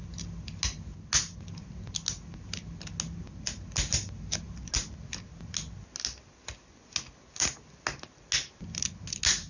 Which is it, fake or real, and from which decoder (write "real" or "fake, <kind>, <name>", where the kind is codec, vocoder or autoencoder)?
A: real